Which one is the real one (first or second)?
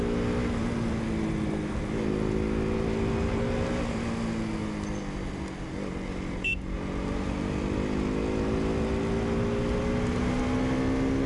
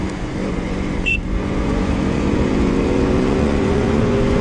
first